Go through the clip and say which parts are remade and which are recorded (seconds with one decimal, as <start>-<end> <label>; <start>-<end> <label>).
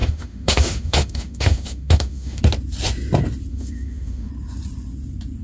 0.0-2.4 remade; 2.4-3.5 recorded; 3.5-4.3 remade; 4.3-5.4 recorded